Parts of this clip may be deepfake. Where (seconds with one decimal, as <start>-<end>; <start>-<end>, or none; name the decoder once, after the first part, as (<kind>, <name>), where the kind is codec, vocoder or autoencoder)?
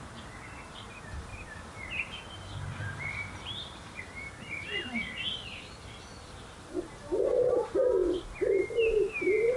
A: 1.3-5.6 (vocoder, BigVGAN v2)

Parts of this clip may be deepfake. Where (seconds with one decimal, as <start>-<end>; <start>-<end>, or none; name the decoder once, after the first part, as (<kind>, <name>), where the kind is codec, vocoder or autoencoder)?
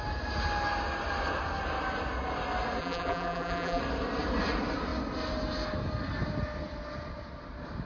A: 2.8-3.8 (vocoder, BigVGAN v2)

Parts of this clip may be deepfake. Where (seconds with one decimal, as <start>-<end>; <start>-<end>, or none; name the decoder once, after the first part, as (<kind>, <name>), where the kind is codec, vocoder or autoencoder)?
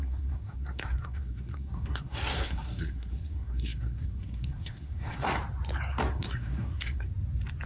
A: 0.0-5.3 (codec, SNAC); 6.1-7.1